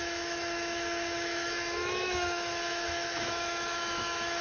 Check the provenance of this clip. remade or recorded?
remade